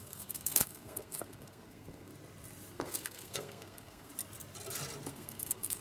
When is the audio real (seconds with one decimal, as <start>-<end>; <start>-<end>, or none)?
2.1-2.7; 4.1-5.1